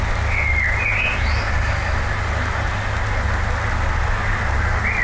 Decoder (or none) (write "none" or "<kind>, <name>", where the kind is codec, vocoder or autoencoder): none